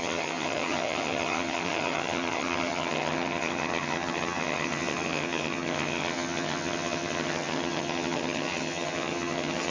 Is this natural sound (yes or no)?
no